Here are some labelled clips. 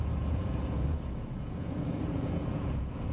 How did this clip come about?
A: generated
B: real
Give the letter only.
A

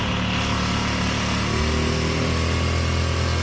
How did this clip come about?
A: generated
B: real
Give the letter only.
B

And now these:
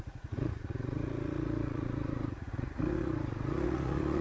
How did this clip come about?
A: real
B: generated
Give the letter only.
B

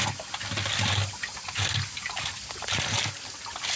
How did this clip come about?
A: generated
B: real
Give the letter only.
B